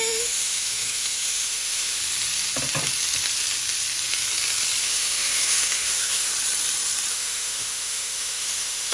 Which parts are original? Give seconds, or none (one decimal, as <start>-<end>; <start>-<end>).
2.0-4.8; 6.3-7.1